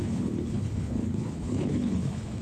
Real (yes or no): no